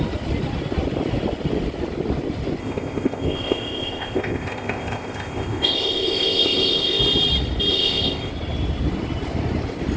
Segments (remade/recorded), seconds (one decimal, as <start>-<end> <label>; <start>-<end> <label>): 0.0-2.6 recorded; 2.6-7.0 remade; 7.0-7.7 recorded; 7.7-8.3 remade; 8.3-10.0 recorded